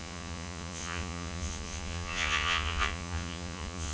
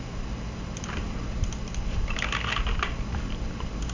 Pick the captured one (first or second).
second